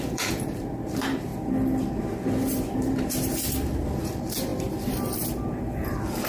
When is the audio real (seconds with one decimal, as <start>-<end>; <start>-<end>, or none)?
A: 1.3-2.0